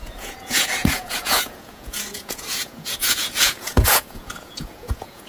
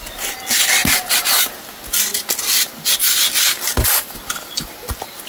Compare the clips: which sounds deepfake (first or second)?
first